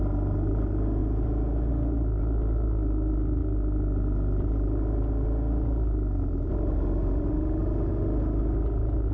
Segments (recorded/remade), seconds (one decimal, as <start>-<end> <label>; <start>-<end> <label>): 0.0-1.0 recorded; 1.0-1.7 remade; 1.7-9.1 recorded